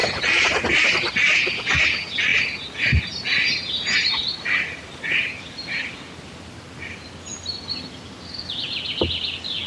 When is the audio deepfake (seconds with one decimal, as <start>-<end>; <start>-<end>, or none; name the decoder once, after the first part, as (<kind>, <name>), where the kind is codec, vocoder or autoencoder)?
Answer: none